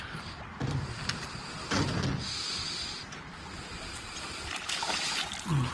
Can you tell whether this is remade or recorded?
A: recorded